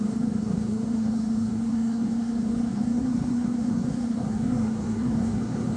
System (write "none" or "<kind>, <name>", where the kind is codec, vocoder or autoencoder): codec, SNAC